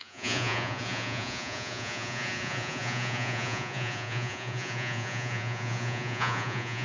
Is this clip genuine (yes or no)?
no